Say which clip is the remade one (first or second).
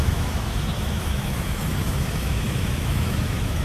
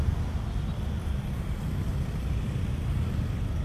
first